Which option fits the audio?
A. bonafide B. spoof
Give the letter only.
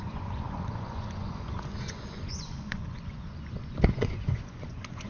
B